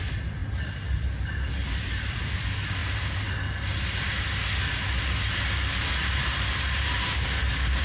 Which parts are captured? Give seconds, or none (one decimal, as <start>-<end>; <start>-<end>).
0.0-7.8